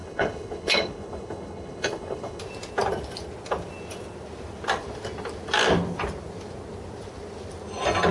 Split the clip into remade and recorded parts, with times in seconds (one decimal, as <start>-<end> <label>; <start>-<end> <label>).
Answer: 0.0-2.4 remade; 2.4-8.1 recorded